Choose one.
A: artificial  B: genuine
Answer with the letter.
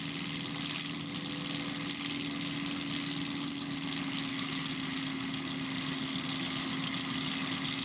B